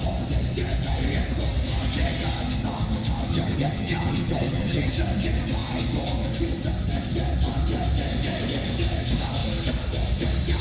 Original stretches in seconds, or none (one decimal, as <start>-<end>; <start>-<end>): 0.0-3.3; 4.9-10.6